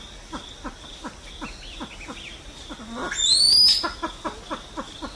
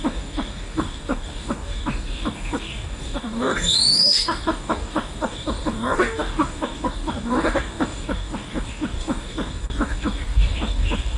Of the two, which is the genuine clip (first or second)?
first